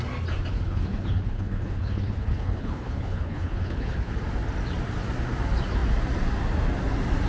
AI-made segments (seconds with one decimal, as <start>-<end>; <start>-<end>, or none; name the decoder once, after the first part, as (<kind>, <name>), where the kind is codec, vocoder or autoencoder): 0.5-4.1 (codec, HILCodec)